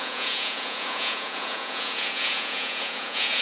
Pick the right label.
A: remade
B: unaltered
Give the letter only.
A